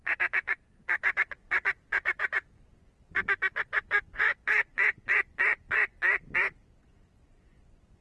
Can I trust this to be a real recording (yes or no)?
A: no